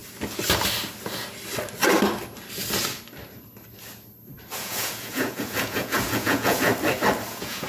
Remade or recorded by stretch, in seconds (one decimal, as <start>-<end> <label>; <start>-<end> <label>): 0.0-4.6 recorded; 4.6-6.7 remade; 6.7-7.3 recorded; 7.3-7.7 remade